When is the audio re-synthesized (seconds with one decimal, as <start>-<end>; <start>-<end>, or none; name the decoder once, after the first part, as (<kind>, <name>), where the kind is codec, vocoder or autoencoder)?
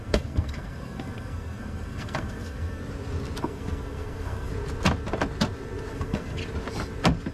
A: 0.0-2.8 (codec, SNAC); 3.4-4.5; 5.9-6.4